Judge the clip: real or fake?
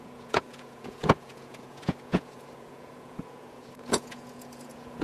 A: fake